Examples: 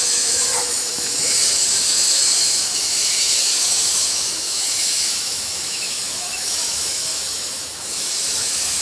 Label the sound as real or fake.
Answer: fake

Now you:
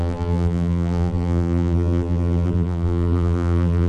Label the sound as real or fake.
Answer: fake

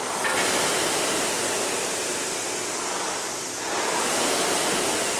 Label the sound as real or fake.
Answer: real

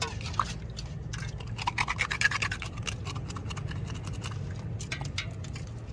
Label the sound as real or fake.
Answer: real